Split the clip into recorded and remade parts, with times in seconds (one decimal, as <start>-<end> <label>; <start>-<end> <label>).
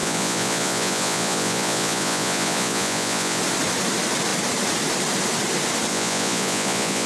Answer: 0.0-3.4 remade; 3.4-5.9 recorded; 5.9-7.1 remade